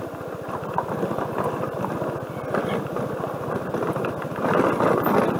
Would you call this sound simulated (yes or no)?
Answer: no